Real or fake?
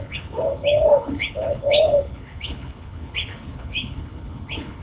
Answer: fake